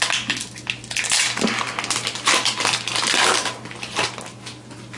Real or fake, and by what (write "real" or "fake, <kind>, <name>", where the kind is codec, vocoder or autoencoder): real